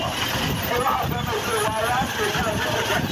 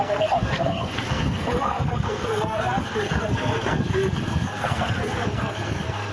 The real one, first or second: first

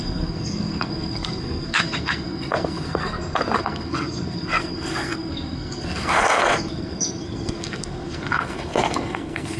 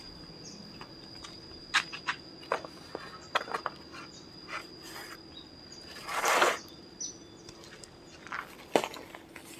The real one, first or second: second